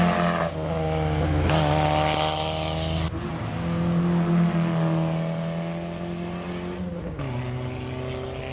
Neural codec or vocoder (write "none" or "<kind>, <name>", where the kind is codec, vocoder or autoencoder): none